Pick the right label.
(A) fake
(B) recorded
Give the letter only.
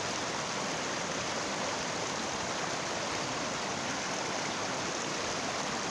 B